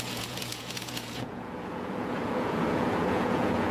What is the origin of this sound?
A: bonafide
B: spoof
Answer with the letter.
B